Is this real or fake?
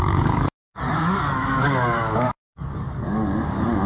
fake